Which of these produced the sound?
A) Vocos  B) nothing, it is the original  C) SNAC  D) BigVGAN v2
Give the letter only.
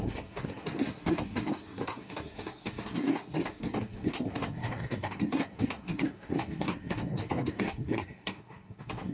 C